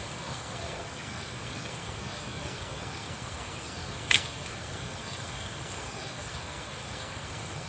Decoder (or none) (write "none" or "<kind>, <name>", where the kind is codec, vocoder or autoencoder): codec, SNAC